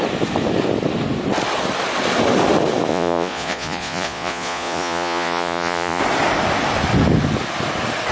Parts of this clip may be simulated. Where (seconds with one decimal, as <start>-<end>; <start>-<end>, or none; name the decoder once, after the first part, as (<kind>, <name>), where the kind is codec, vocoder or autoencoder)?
2.9-6.0 (vocoder, Vocos)